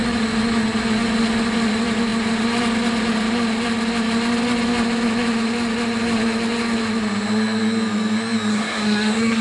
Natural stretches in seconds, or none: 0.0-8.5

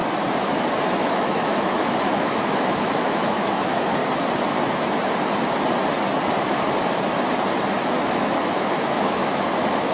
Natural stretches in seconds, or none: 0.0-1.1; 4.0-8.0

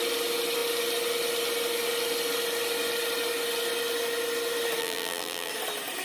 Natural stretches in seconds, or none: 0.0-4.8; 5.5-6.0

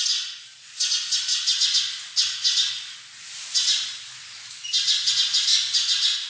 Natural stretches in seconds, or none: 0.0-6.3

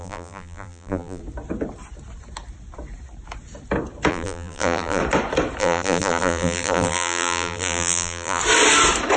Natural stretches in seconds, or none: 1.2-4.1; 5.0-5.6; 8.4-9.2

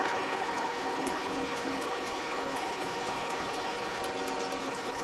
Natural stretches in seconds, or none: 4.0-4.6

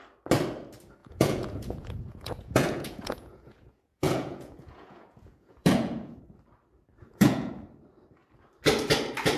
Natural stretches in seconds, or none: 0.0-1.0; 6.2-7.0; 7.5-9.4